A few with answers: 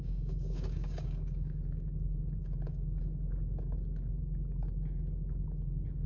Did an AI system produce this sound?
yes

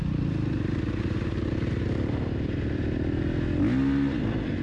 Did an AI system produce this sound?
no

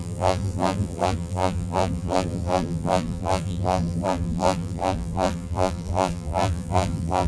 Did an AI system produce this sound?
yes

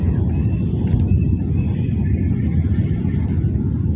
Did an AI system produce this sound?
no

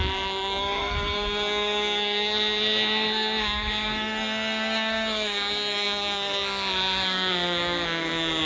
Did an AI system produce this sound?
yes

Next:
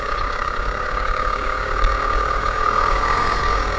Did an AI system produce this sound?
yes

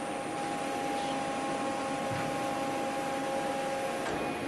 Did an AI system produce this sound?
no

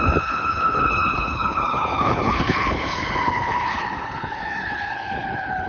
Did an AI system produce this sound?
yes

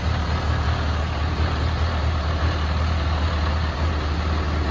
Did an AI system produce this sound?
no